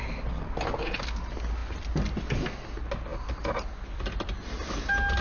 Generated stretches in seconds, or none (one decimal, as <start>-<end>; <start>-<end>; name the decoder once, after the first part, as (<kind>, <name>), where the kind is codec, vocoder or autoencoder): none